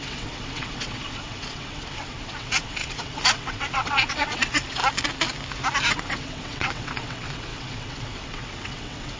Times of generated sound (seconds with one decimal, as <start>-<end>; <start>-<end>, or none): 0.0-4.8; 5.9-9.2